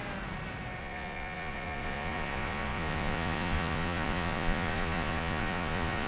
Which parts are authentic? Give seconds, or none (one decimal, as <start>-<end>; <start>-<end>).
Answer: 0.0-0.8